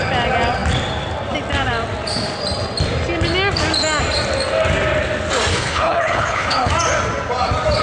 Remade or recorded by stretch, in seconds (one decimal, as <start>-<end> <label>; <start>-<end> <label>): 0.0-5.5 recorded; 5.5-6.7 remade; 6.7-7.8 recorded